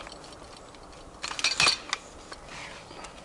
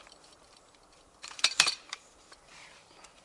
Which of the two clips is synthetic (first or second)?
second